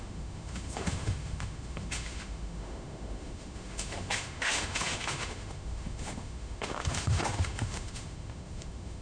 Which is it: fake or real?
fake